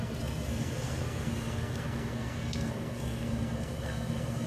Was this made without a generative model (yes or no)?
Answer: no